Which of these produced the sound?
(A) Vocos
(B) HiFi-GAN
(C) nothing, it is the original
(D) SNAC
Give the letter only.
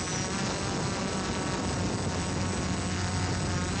C